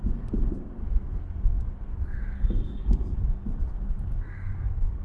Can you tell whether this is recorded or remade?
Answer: remade